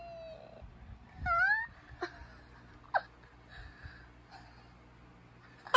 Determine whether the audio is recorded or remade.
recorded